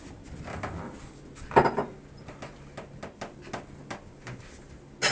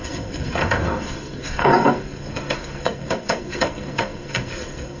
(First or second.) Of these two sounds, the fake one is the second